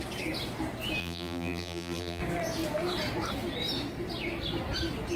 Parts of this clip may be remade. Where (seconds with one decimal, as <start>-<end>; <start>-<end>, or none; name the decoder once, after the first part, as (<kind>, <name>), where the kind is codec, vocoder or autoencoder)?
1.0-2.2 (vocoder, BigVGAN v2)